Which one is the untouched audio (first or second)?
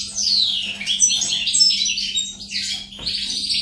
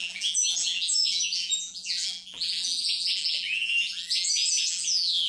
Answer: first